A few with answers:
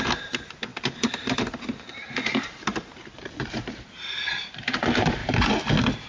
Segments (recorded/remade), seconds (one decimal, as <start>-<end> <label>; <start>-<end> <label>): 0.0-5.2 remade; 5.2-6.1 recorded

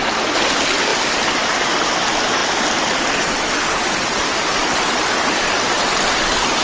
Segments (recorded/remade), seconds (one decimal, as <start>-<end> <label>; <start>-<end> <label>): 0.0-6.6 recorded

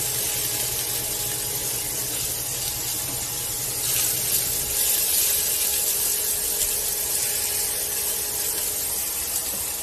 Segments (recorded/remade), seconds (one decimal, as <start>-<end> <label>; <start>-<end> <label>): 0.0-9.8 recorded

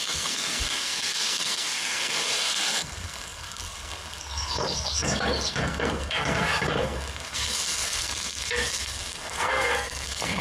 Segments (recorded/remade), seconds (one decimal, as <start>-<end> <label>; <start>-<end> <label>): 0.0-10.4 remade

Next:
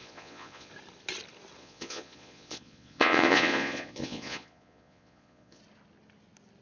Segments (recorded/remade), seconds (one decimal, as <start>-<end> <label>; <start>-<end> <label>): 0.0-0.7 remade; 0.7-1.6 recorded; 1.6-5.6 remade; 5.6-6.6 recorded

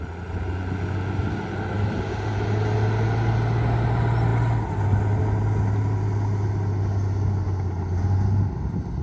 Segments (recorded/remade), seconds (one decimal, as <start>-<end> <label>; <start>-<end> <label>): 0.0-9.0 recorded

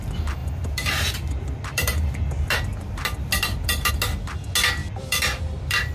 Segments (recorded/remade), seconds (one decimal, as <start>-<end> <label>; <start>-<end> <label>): 0.0-0.4 recorded; 0.4-3.9 remade; 3.9-4.8 recorded; 4.8-5.9 remade

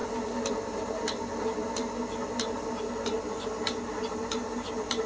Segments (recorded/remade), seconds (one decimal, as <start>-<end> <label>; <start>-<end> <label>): 0.0-5.1 recorded